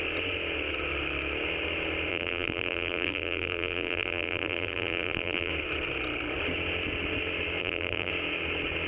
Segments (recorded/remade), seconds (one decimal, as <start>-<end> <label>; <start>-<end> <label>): 0.0-2.1 recorded; 2.1-5.5 remade; 5.5-7.6 recorded; 7.6-8.1 remade; 8.1-8.9 recorded